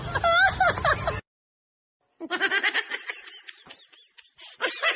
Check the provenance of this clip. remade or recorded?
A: recorded